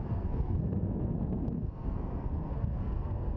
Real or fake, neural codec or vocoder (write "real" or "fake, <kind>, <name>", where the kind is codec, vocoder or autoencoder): fake, codec, SNAC